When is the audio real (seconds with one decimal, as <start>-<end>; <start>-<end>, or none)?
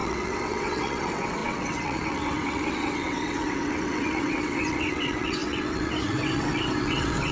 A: none